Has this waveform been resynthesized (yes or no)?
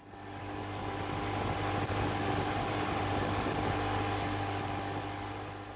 no